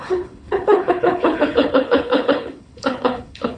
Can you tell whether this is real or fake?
fake